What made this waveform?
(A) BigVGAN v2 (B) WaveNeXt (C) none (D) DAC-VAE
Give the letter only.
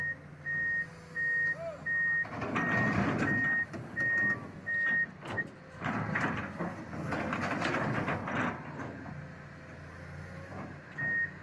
C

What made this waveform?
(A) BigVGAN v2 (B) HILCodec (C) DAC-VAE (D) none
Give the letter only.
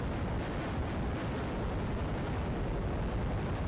D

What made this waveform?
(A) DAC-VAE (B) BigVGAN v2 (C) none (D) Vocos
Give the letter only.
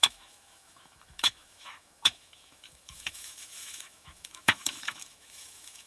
A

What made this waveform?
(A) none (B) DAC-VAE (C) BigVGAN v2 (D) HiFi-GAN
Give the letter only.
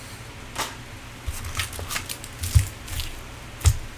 A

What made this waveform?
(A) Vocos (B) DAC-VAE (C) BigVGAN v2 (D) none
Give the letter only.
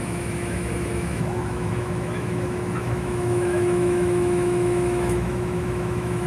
B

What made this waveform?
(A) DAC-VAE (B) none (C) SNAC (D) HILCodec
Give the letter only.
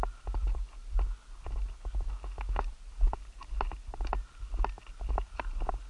B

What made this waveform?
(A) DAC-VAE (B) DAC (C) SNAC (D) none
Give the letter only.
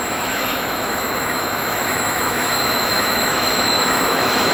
A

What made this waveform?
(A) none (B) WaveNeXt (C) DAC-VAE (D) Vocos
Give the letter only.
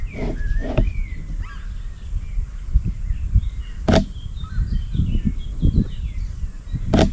A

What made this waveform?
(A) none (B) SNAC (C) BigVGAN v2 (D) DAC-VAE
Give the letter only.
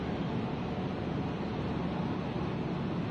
A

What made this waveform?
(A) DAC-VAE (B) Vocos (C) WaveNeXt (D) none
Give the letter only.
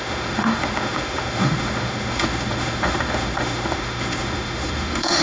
A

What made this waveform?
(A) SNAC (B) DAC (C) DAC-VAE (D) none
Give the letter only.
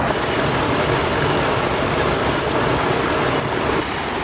D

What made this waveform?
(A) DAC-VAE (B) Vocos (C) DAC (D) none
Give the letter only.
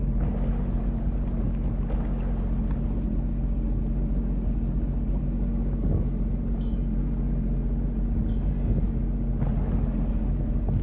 D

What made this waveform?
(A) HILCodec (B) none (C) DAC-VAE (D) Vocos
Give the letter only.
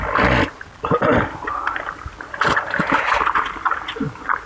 B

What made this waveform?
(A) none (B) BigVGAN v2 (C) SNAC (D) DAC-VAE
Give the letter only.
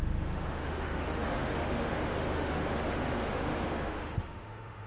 D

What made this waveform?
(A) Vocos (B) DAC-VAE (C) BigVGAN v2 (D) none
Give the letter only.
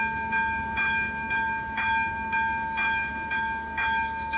B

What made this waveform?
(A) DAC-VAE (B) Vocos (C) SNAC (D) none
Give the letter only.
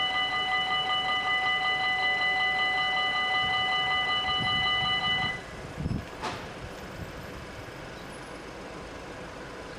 D